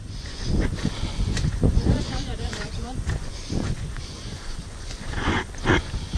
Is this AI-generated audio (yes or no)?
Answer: yes